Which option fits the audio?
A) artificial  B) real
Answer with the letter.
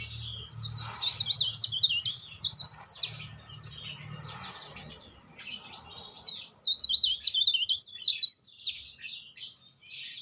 B